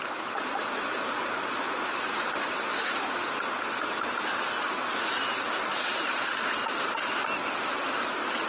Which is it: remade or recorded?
recorded